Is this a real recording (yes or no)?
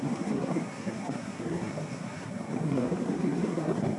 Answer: no